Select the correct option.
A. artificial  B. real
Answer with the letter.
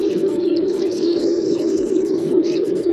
A